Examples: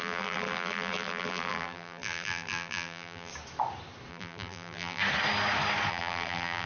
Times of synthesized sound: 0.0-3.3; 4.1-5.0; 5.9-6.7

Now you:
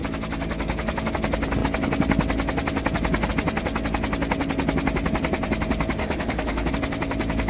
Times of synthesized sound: 6.0-6.7

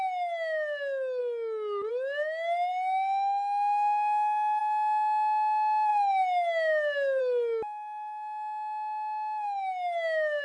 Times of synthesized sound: none

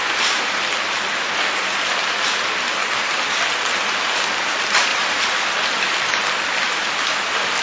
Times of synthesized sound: none

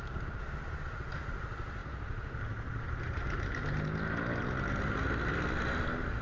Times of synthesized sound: none

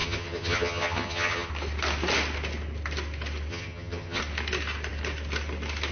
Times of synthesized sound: 0.0-1.5; 3.5-4.2

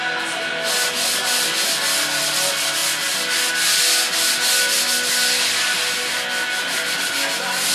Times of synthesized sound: none